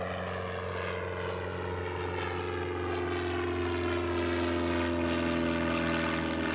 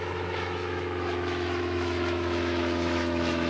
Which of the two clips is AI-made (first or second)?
second